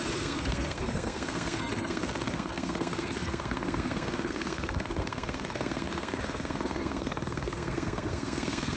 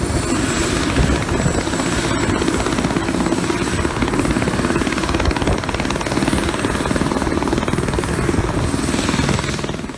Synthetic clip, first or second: first